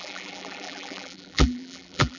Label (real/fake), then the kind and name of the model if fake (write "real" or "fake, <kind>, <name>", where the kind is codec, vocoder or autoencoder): fake, vocoder, BigVGAN v2